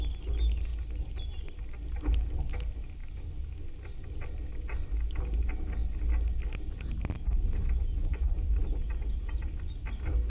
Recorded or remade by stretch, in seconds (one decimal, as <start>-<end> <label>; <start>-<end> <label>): 0.0-7.6 recorded; 7.6-8.3 remade; 8.3-10.3 recorded